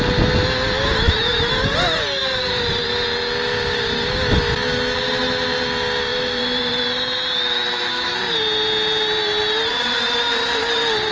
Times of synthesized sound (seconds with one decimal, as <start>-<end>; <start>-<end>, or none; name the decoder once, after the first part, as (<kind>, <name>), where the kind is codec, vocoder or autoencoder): 2.2-2.8 (vocoder, BigVGAN v2); 6.1-6.8; 9.7-10.2